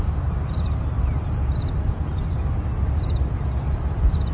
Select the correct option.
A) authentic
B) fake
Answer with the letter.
A